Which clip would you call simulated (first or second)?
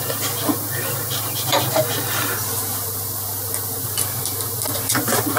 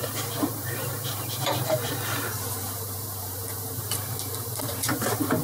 second